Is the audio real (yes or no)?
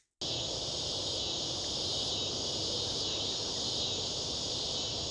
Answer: yes